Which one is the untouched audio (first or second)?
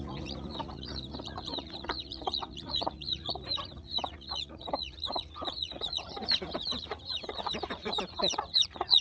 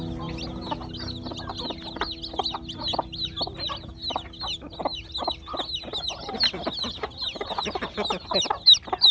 second